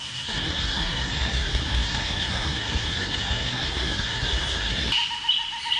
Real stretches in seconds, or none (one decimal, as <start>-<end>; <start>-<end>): 4.9-5.8